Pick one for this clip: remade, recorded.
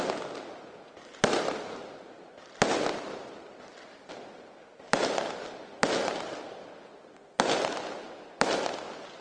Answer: recorded